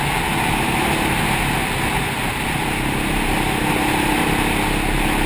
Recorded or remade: recorded